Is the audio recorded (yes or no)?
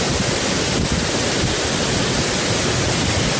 yes